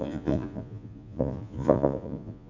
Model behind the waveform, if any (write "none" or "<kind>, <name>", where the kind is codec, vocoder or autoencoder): vocoder, Vocos